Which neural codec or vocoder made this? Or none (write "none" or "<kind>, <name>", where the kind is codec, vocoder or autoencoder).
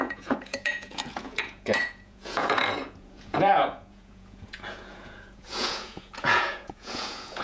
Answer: vocoder, Vocos